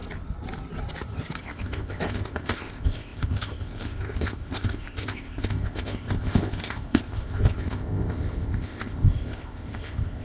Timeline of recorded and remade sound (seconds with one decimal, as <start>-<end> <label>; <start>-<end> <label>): 0.0-1.4 recorded; 1.4-10.2 remade